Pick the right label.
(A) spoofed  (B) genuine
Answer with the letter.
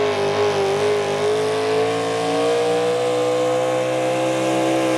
B